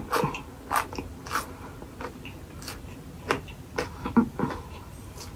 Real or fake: real